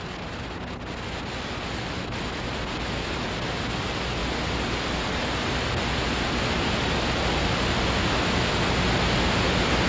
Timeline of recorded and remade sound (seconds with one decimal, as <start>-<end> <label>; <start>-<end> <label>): 0.0-9.9 recorded